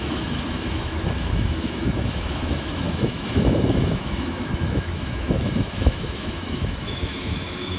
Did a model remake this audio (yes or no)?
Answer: yes